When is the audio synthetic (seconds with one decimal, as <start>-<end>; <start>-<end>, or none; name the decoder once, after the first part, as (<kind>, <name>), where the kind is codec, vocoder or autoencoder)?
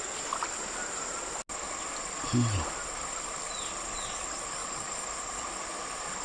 none